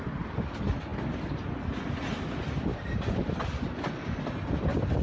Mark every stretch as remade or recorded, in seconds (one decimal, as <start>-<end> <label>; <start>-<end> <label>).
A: 0.0-5.0 recorded